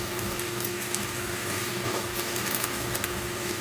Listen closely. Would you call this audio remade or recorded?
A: remade